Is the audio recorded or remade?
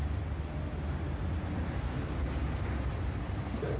recorded